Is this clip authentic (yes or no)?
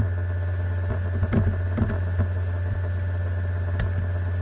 yes